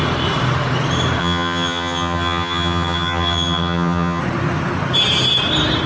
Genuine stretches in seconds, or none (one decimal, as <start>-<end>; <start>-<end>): 0.0-1.2; 4.2-5.9